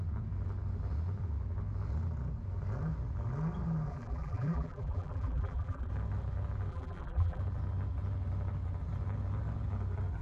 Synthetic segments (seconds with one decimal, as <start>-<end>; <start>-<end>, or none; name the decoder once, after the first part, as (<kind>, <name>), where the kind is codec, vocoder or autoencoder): 3.9-5.9 (vocoder, BigVGAN v2); 6.7-7.4